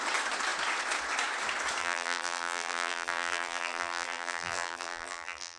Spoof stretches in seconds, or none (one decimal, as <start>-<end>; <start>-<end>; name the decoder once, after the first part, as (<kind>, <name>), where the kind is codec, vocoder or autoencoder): 1.8-5.6 (vocoder, BigVGAN v2)